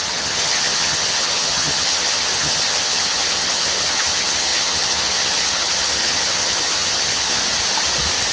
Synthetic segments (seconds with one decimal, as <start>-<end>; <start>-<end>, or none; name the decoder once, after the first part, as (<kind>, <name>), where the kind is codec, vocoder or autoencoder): 0.0-7.4 (vocoder, HiFi-GAN)